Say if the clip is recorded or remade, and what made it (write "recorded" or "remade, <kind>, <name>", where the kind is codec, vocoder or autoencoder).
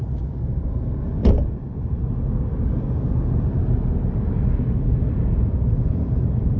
recorded